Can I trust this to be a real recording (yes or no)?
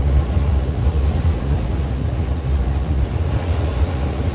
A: no